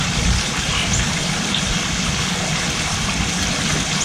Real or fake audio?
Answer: real